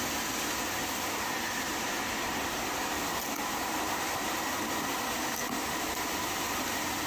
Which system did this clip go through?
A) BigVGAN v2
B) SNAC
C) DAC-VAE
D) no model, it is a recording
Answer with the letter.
D